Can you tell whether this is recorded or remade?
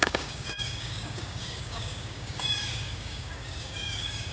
remade